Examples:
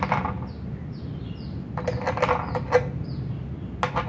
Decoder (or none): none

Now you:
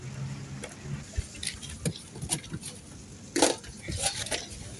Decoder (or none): none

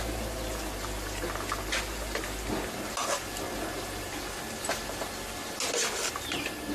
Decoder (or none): none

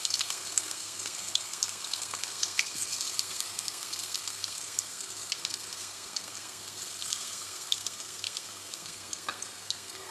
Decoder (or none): codec, SNAC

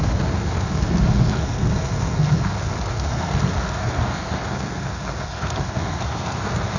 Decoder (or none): codec, SNAC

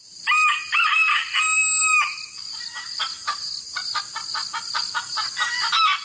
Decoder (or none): none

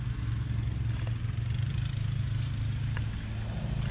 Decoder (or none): none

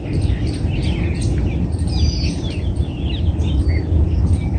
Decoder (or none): none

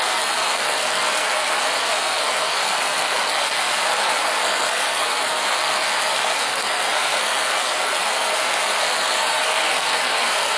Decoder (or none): codec, SNAC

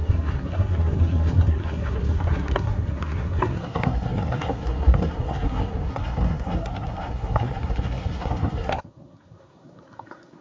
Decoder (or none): codec, SNAC